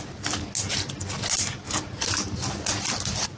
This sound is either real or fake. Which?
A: real